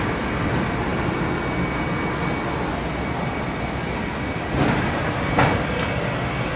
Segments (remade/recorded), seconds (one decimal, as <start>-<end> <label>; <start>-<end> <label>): 0.0-6.6 recorded

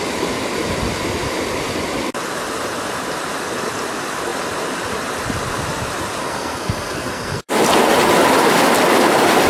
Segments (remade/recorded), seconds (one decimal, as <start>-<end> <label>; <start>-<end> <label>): 0.0-6.2 recorded; 6.2-7.5 remade; 7.5-9.5 recorded